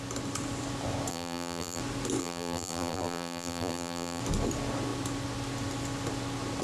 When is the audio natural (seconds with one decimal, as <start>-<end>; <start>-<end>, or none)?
0.0-1.1; 1.8-2.2; 4.2-6.6